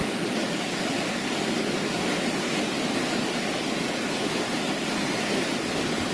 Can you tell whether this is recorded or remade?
recorded